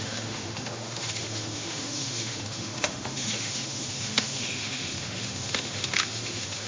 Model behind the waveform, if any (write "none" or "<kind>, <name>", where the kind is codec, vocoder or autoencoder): autoencoder, DAC-VAE